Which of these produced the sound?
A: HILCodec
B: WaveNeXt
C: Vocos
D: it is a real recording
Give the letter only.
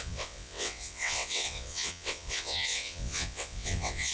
B